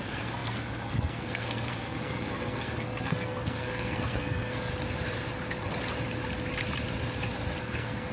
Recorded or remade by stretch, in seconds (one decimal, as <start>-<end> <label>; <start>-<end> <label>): 0.0-4.7 remade; 4.7-7.6 recorded; 7.6-8.1 remade